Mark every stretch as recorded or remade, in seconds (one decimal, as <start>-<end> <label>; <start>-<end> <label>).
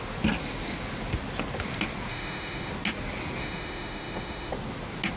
0.0-2.1 recorded; 2.1-2.7 remade; 2.7-3.4 recorded; 3.4-4.5 remade; 4.5-5.2 recorded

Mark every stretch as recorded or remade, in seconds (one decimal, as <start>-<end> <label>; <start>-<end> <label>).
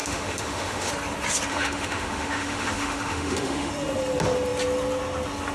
0.0-0.9 remade; 0.9-1.5 recorded; 1.5-3.7 remade; 3.7-5.5 recorded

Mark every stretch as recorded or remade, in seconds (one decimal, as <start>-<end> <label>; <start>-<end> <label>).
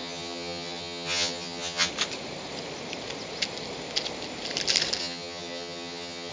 0.0-1.9 remade; 1.9-5.0 recorded; 5.0-6.3 remade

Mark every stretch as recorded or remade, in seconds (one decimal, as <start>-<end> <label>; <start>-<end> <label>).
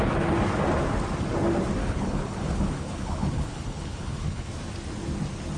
0.0-1.8 recorded; 1.8-4.5 remade; 4.5-5.6 recorded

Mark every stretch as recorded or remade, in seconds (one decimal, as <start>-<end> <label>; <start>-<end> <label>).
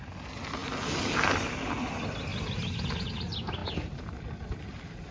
0.0-2.3 recorded; 2.3-3.1 remade; 3.1-3.6 recorded; 3.6-4.2 remade; 4.2-5.1 recorded